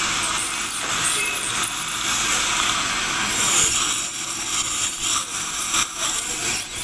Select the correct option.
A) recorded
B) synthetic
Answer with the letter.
A